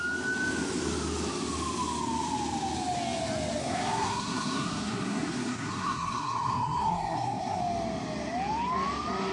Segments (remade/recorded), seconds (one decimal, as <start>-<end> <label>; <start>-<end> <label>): 0.0-3.6 recorded; 3.6-7.6 remade; 7.6-9.3 recorded